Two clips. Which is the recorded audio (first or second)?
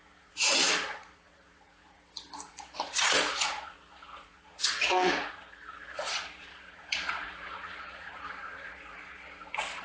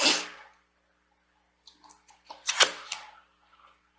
second